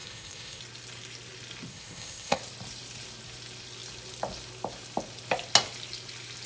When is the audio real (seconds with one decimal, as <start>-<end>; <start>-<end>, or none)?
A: 0.6-1.7; 2.4-6.5